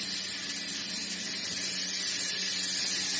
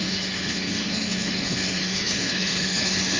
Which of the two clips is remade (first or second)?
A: second